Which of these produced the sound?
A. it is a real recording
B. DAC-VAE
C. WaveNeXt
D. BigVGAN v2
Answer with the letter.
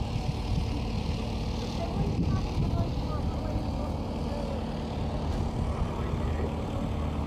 A